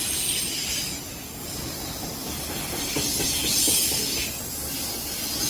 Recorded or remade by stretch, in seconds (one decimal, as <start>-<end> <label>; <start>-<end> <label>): 0.0-5.5 recorded